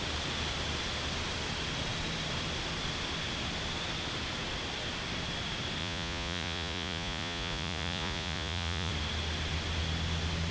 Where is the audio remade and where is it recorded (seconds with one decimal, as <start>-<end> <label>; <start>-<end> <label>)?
0.0-5.8 recorded; 5.8-8.9 remade; 8.9-10.5 recorded